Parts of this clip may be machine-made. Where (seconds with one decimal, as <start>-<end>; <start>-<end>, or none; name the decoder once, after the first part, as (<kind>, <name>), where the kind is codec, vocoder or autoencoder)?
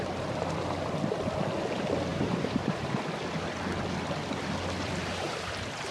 2.1-3.0 (vocoder, BigVGAN v2); 5.0-5.9